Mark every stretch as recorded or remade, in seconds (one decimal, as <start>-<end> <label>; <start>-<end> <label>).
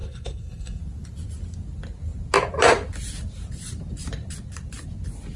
0.0-0.8 remade; 0.8-5.4 recorded